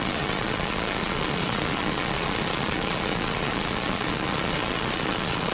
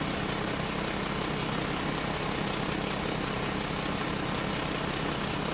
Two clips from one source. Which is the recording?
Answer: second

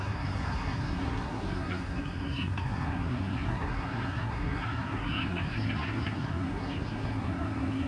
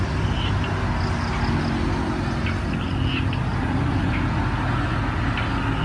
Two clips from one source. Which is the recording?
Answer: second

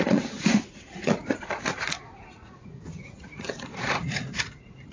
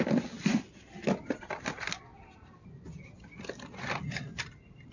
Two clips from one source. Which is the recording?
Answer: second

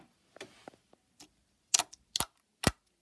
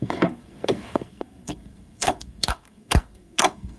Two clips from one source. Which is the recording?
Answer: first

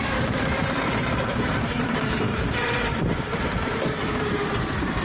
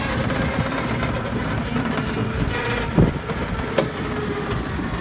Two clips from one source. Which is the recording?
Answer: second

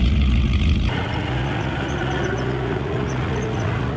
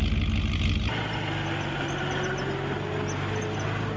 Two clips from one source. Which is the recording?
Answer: second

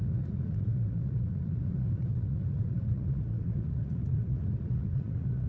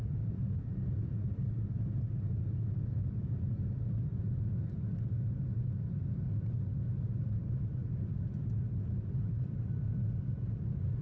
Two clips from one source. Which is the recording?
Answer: second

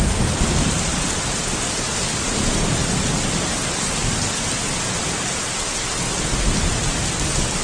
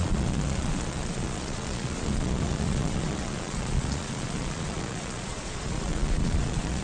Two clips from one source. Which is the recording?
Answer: first